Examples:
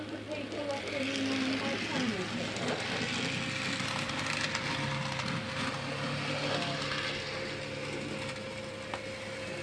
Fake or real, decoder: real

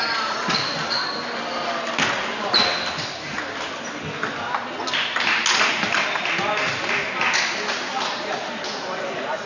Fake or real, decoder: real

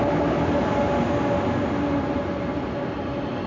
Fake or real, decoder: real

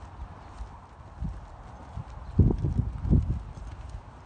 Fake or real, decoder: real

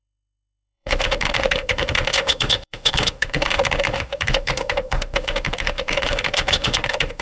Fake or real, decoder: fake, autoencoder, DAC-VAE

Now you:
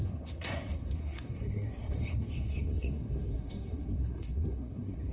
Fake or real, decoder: fake, codec, SNAC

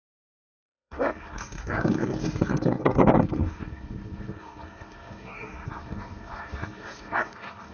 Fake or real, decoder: fake, codec, SNAC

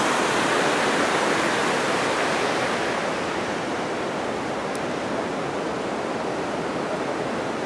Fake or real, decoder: real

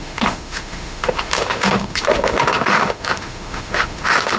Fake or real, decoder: fake, autoencoder, DAC-VAE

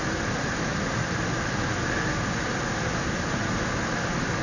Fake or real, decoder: real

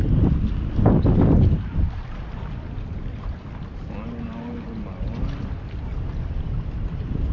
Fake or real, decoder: real